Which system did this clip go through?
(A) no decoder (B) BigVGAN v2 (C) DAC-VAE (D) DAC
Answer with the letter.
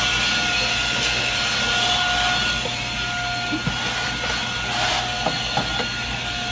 A